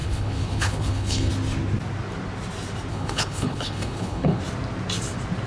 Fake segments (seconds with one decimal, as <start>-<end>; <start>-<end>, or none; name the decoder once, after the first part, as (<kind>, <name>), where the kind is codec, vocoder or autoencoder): 0.0-1.3 (codec, HILCodec); 2.9-4.4

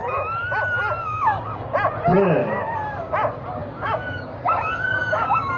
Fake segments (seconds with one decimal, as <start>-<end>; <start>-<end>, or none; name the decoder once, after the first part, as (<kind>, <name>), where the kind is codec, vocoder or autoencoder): 1.0-1.7 (codec, DAC); 2.4-3.1; 3.6-5.6

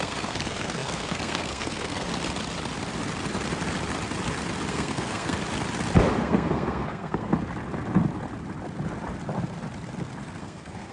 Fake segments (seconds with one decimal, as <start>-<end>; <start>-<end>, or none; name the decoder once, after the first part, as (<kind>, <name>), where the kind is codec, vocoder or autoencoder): 0.0-2.1 (codec, SNAC); 4.7-5.4; 6.2-7.3; 10.4-10.9

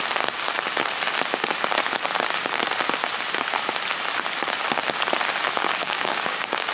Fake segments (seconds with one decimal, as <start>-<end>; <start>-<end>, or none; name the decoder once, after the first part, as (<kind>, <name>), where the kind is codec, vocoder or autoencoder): 5.8-6.7 (codec, DAC)